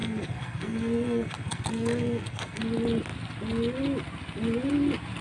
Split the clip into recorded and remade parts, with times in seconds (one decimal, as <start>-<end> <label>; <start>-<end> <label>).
0.0-2.6 remade; 2.6-5.2 recorded